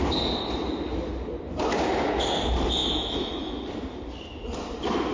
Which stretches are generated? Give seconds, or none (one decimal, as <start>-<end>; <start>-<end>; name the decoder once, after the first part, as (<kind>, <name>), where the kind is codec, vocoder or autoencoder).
2.8-3.6 (autoencoder, DAC-VAE)